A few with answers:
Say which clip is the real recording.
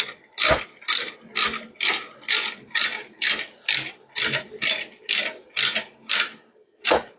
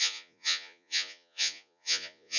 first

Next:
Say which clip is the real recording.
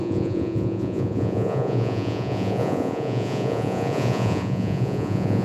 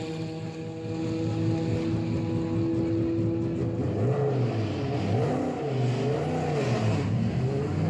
second